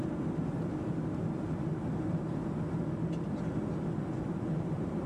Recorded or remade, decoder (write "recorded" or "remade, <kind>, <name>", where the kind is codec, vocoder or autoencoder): recorded